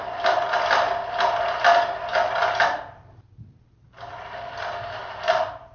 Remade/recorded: recorded